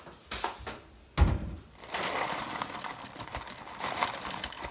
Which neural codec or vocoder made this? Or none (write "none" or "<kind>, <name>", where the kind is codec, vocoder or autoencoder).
none